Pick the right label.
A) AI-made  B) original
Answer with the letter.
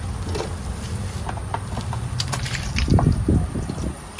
A